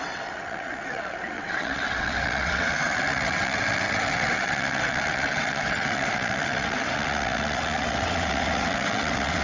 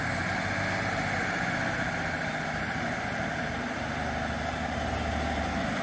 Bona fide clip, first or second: second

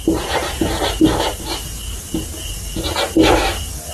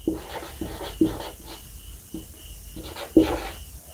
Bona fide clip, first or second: second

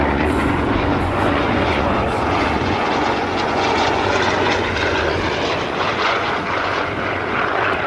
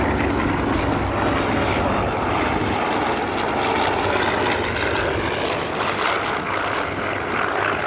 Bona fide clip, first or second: second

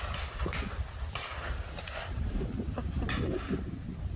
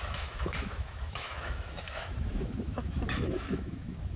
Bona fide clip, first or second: first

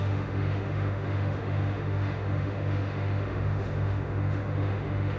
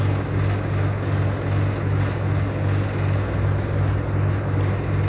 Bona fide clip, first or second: second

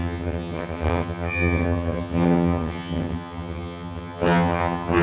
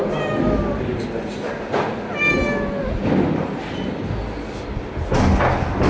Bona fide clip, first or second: second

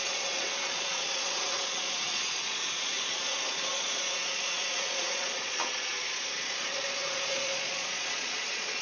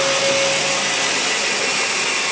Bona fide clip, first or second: second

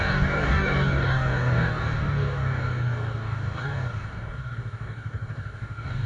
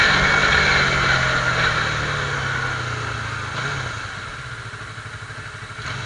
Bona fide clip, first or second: second